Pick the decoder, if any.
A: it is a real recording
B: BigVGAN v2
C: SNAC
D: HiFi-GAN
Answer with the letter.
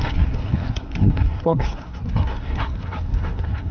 C